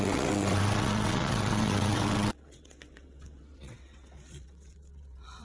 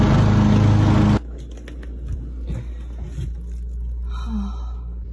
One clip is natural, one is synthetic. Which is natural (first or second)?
second